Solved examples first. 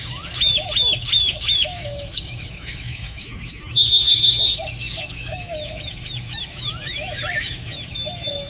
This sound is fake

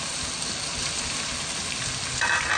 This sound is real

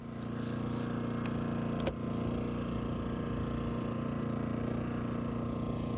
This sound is real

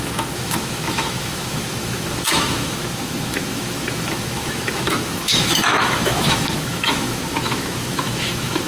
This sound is fake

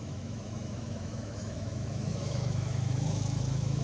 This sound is fake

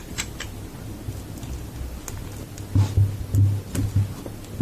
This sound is real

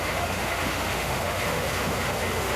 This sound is fake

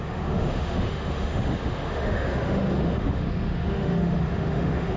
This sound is fake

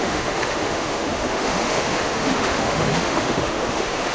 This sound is fake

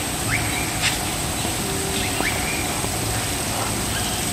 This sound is real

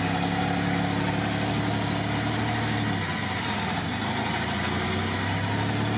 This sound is real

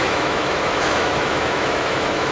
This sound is fake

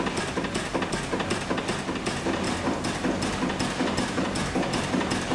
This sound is real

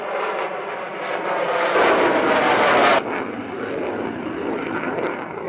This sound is real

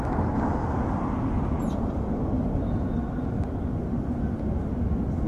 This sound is real